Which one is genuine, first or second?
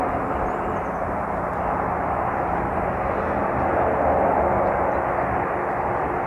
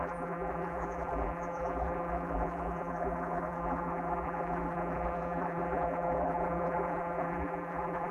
first